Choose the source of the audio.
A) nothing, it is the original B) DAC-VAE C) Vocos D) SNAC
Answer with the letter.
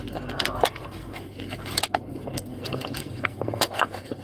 D